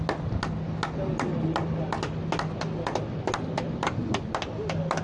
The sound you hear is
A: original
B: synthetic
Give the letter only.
A